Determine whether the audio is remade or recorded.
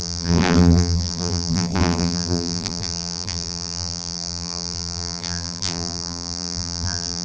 remade